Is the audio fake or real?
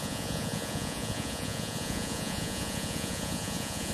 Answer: fake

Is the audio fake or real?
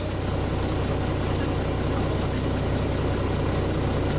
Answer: real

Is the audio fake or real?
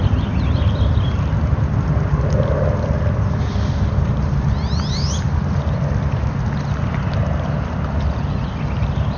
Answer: real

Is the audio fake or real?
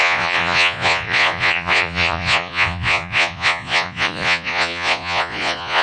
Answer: fake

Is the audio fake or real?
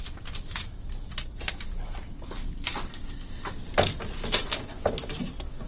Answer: real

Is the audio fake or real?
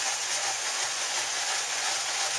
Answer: fake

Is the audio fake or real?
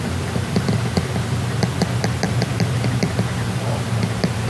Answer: real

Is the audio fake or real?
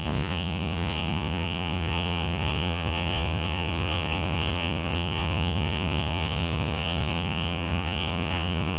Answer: fake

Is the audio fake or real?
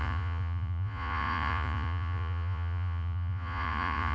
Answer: fake